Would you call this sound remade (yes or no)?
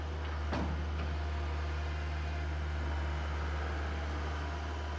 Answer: no